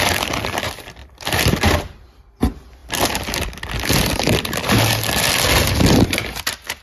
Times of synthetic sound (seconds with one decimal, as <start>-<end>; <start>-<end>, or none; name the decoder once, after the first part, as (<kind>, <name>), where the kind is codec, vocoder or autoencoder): 1.0-1.7 (vocoder, BigVGAN v2)